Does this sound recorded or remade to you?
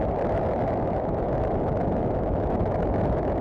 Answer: remade